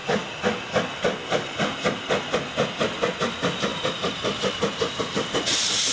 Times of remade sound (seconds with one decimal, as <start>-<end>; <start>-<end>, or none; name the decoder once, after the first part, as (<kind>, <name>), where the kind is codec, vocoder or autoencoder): 3.2-5.9 (vocoder, BigVGAN v2)